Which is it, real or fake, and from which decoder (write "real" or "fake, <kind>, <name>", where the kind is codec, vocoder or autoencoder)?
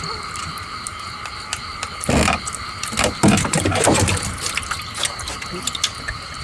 real